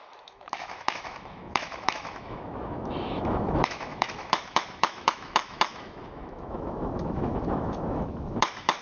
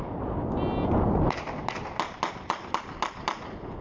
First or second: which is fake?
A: first